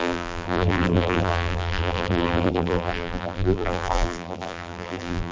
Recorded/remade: remade